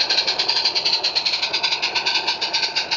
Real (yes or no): yes